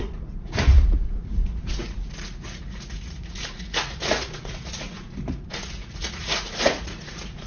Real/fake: fake